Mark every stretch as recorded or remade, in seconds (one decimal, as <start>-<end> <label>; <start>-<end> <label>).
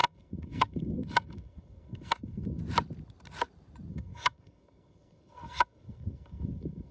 0.0-2.6 remade; 2.6-3.9 recorded; 3.9-6.9 remade